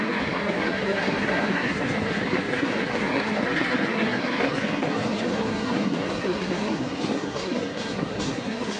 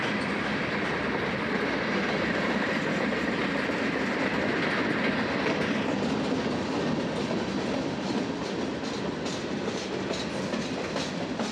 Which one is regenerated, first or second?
first